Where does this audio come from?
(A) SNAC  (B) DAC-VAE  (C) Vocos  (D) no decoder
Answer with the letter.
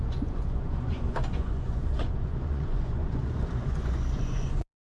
C